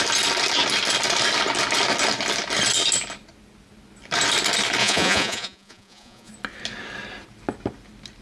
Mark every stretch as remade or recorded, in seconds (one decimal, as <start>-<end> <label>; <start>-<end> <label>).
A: 0.0-4.8 recorded; 4.8-6.3 remade; 6.3-8.2 recorded